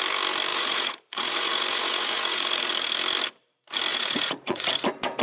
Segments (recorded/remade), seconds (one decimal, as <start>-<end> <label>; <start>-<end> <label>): 0.0-0.5 recorded; 0.5-2.7 remade; 2.7-3.9 recorded; 3.9-4.7 remade; 4.7-5.2 recorded

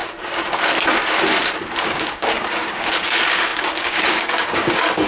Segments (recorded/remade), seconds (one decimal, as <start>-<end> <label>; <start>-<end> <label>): 0.0-1.8 recorded; 1.8-5.1 remade

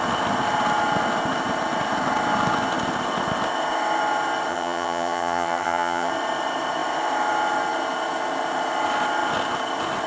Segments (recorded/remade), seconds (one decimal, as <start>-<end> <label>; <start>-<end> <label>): 0.0-4.5 recorded; 4.5-6.1 remade; 6.1-10.1 recorded

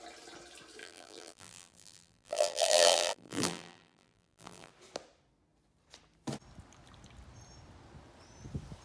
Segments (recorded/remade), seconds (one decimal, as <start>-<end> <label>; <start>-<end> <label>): 0.0-0.8 recorded; 0.8-4.7 remade; 4.7-8.8 recorded